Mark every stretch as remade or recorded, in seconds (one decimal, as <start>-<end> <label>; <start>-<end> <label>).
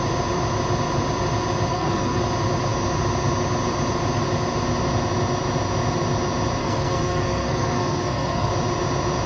0.0-1.7 recorded; 1.7-2.2 remade; 2.2-6.6 recorded; 6.6-8.5 remade; 8.5-9.3 recorded